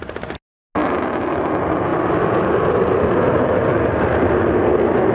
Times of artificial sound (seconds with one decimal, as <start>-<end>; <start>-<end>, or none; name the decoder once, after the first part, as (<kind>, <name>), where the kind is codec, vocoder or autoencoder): none